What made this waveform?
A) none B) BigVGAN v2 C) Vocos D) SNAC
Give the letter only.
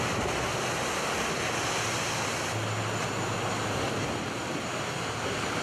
A